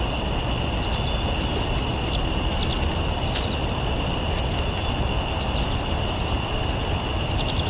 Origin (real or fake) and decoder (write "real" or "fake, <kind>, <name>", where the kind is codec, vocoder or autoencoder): real